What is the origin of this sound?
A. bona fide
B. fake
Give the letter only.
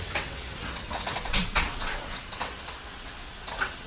B